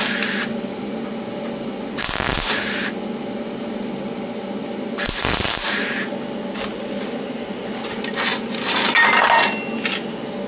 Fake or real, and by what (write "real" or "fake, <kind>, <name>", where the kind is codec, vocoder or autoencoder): real